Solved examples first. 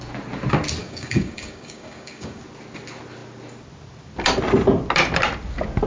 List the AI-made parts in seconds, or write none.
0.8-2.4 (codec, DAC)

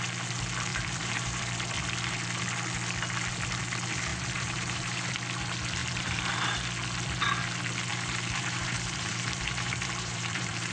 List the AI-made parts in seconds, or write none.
0.7-1.4 (vocoder, BigVGAN v2); 4.1-5.1; 5.8-6.3; 7.9-10.7

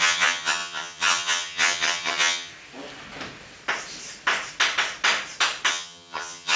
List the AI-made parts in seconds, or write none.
0.0-2.5 (vocoder, HiFi-GAN); 5.7-6.6

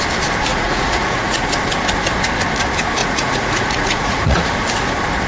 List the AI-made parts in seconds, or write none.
0.5-1.5 (vocoder, Vocos); 3.0-4.5

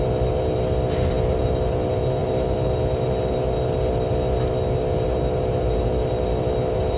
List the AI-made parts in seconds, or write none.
none